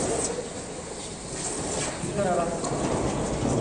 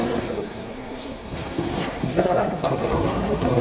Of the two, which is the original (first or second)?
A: first